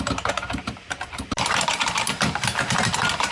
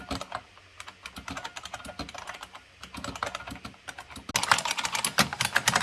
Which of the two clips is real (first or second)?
second